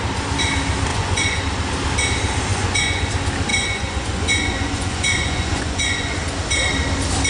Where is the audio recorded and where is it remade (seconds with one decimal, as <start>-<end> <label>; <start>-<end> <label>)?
0.0-0.9 recorded; 0.9-1.4 remade; 1.4-2.5 recorded; 2.5-3.1 remade; 3.1-3.5 recorded; 3.5-6.2 remade; 6.2-7.3 recorded